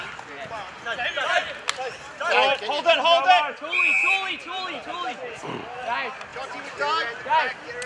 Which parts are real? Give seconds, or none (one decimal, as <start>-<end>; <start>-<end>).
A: 0.0-7.9